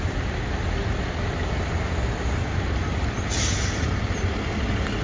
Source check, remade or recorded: recorded